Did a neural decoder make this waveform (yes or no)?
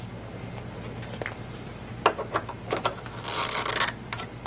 no